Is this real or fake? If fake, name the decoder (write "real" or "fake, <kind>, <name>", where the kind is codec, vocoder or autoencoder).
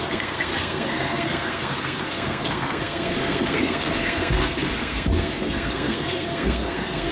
fake, codec, SNAC